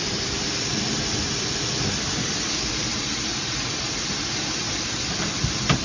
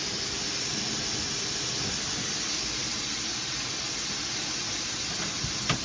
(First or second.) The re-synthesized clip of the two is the first